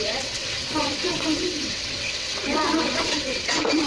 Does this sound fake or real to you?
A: fake